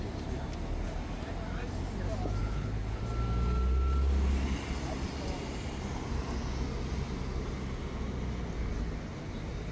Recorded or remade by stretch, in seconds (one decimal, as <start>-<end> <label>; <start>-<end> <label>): 0.0-2.4 recorded; 2.4-3.0 remade; 3.0-9.7 recorded